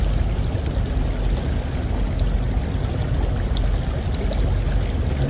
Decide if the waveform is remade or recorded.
recorded